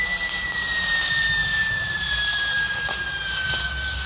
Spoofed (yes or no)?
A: no